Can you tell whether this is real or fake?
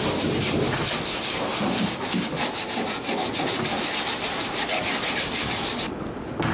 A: real